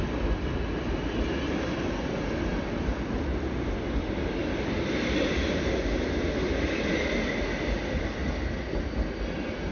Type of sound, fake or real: real